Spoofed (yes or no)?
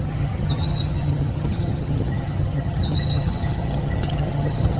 yes